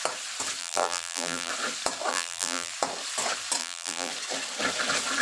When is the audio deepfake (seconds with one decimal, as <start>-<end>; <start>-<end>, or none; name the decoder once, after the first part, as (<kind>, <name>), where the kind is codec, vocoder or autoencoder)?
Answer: 0.6-1.5 (vocoder, BigVGAN v2); 2.1-2.7; 3.6-4.1